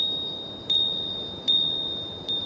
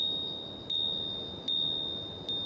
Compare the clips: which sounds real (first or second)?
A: second